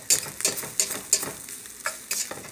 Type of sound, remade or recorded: recorded